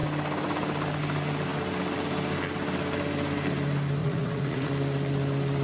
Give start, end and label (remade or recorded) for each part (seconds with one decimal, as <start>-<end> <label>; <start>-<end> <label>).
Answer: 0.0-4.0 recorded; 4.0-4.7 remade; 4.7-5.6 recorded